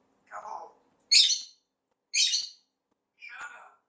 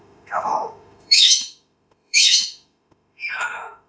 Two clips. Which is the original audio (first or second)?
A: first